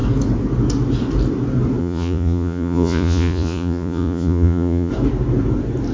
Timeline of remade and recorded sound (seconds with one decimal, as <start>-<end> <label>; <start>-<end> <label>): 0.0-1.8 recorded; 1.8-4.9 remade; 4.9-5.9 recorded